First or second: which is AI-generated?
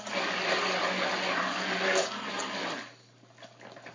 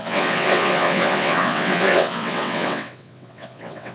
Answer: second